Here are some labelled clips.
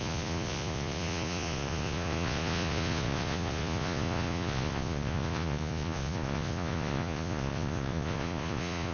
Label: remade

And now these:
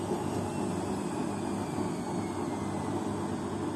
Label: recorded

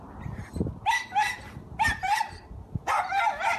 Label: recorded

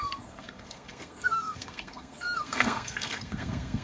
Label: remade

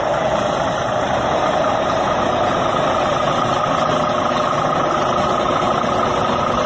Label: recorded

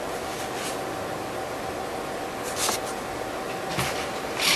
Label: recorded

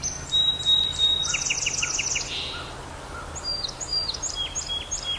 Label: recorded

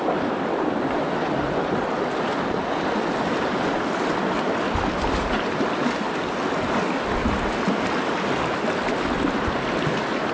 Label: recorded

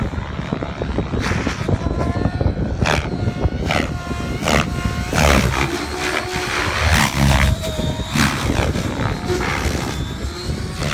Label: recorded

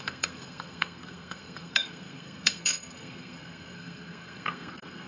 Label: remade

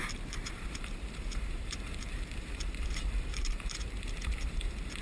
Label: remade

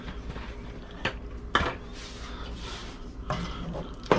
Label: recorded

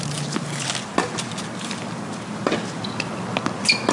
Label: recorded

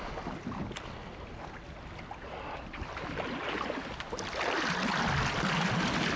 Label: recorded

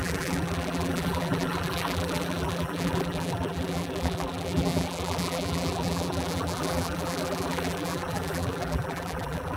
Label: remade